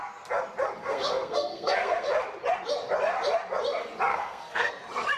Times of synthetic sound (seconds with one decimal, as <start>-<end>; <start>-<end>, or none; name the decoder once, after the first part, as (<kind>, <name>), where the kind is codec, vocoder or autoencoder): 0.8-2.1 (codec, SNAC); 4.1-4.7